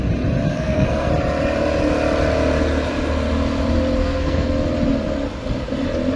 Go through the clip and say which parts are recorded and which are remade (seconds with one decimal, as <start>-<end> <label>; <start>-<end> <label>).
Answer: 0.0-0.5 recorded; 0.5-1.1 remade; 1.1-4.0 recorded; 4.0-4.5 remade; 4.5-6.2 recorded